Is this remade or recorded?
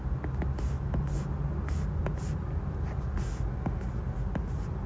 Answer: recorded